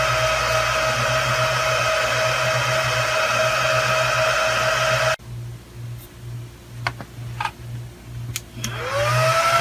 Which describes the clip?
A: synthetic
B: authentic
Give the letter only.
B